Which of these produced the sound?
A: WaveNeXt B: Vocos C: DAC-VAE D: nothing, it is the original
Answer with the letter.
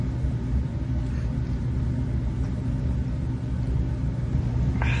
D